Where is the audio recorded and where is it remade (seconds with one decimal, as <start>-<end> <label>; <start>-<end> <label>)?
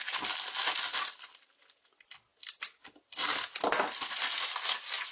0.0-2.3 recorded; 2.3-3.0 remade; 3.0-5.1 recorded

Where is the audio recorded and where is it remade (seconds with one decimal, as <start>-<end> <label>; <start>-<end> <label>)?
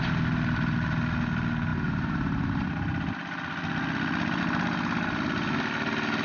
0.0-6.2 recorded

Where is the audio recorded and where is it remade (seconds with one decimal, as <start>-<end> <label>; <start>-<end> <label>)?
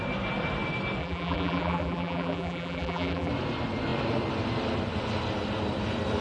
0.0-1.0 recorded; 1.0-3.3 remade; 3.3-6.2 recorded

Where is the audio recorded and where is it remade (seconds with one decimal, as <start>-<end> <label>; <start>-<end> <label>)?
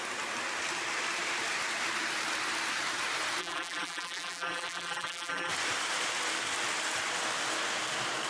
0.0-3.4 recorded; 3.4-5.5 remade; 5.5-8.3 recorded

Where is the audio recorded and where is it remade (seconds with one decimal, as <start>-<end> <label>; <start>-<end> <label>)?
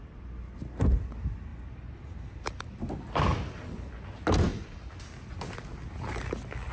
0.0-1.5 recorded; 1.5-2.6 remade; 2.6-3.3 recorded; 3.3-3.9 remade; 3.9-4.5 recorded; 4.5-5.1 remade; 5.1-6.7 recorded